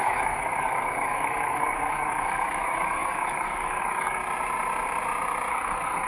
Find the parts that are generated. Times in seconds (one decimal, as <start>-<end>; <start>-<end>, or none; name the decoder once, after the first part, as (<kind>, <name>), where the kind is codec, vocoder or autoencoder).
0.0-4.2 (codec, DAC); 5.5-6.1